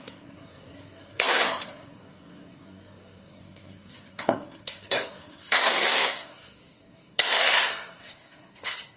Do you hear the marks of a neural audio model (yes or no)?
yes